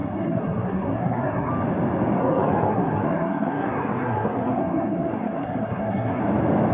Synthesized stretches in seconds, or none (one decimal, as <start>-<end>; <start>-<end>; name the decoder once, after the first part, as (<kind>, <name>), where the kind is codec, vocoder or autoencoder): 0.0-1.5 (codec, SNAC); 2.2-6.2

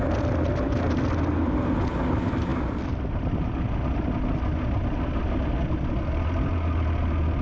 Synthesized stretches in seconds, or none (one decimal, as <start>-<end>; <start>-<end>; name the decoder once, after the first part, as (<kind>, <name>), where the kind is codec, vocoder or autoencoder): none

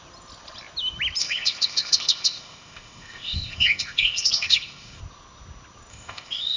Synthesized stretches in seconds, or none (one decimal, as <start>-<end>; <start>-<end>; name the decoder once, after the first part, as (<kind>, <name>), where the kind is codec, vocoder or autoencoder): 1.2-5.0 (codec, ZipCodec); 5.9-6.6

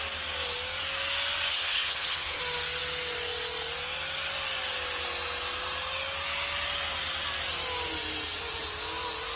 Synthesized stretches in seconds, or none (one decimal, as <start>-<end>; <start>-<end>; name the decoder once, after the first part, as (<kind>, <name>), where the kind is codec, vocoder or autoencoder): 1.5-2.4 (codec, HILCodec)

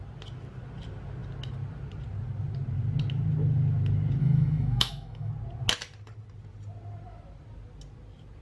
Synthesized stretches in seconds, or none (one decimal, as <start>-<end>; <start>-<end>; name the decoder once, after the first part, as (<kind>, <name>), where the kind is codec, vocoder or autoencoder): 4.2-5.3 (autoencoder, DAC-VAE)